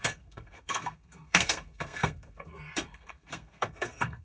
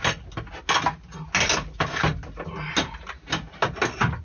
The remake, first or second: first